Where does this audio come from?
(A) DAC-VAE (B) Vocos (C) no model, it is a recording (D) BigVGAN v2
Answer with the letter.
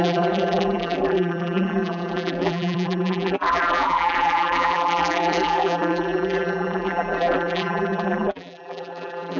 D